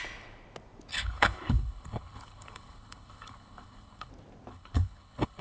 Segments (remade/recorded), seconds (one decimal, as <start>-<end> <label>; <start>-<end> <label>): 0.0-0.9 recorded; 0.9-4.1 remade; 4.1-4.5 recorded; 4.5-5.4 remade